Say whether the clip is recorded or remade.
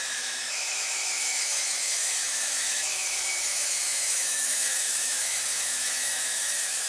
remade